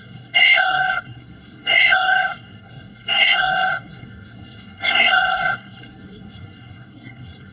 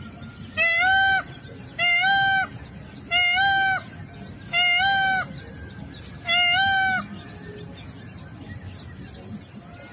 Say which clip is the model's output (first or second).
first